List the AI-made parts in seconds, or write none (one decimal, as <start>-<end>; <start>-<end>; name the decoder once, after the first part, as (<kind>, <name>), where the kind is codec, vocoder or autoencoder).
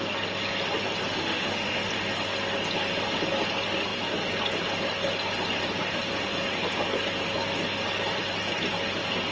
1.1-1.9 (autoencoder, DAC-VAE)